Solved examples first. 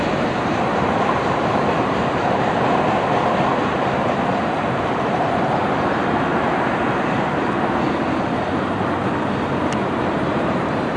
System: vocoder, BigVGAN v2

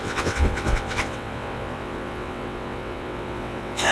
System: vocoder, WaveNeXt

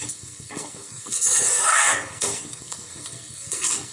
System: codec, SNAC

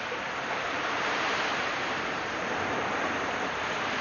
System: vocoder, BigVGAN v2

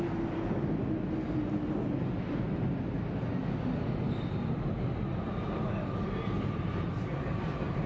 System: none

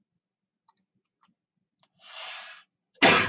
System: none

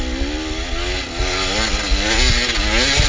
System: none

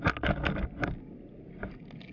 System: none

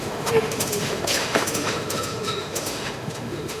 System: autoencoder, DAC-VAE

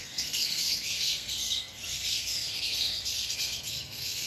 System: codec, SNAC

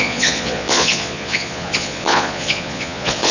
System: vocoder, Vocos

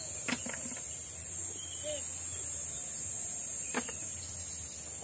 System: none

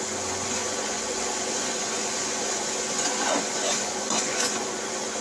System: vocoder, Vocos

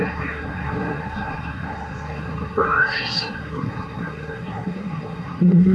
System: codec, SNAC